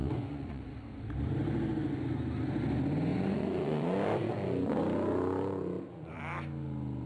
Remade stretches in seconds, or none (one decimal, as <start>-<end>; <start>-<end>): 0.0-0.6; 3.1-6.2